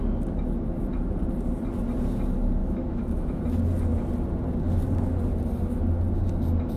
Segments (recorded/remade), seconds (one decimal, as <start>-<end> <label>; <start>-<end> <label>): 0.0-2.6 recorded; 2.6-3.4 remade; 3.4-6.8 recorded